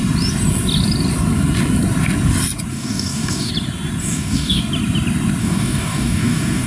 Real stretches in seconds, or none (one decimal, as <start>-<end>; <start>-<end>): 0.0-2.7; 3.5-4.0; 4.6-5.4